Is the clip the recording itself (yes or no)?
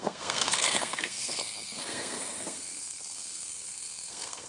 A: no